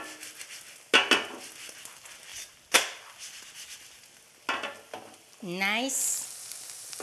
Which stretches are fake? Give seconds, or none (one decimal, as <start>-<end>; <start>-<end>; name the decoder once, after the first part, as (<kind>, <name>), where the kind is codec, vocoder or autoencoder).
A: none